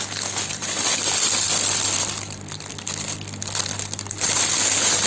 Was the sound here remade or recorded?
recorded